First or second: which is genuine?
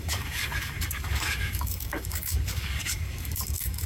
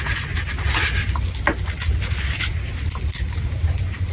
second